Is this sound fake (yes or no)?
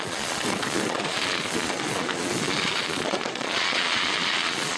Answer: yes